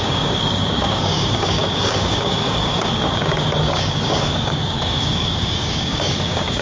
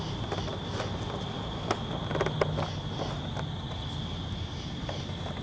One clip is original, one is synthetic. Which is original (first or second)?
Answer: second